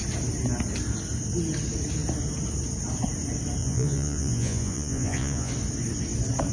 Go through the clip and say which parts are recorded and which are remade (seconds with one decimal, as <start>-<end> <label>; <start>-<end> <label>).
0.0-3.6 recorded; 3.6-5.5 remade; 5.5-6.5 recorded